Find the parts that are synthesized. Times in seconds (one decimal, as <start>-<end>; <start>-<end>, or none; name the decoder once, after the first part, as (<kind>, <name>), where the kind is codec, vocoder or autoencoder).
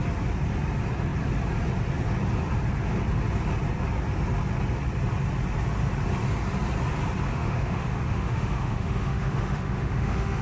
7.3-10.4 (autoencoder, DAC-VAE)